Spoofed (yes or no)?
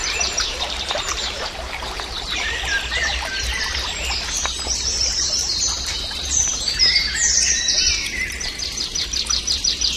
yes